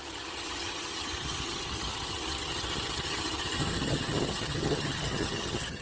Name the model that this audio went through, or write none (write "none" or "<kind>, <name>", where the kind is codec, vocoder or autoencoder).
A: vocoder, HiFi-GAN